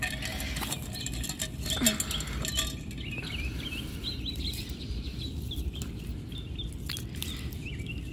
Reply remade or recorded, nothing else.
recorded